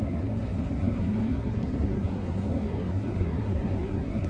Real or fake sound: fake